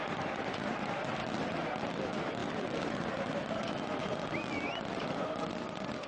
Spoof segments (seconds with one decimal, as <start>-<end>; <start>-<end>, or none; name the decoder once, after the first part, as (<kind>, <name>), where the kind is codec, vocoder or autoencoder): 0.0-0.7 (vocoder, BigVGAN v2); 1.2-1.9; 2.4-2.9